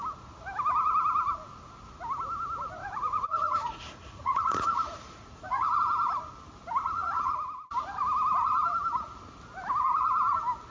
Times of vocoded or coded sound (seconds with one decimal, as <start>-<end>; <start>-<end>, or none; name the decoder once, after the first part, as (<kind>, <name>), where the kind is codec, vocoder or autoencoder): 2.8-5.8 (vocoder, Vocos); 6.8-7.3